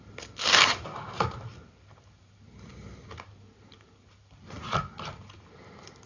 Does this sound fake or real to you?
real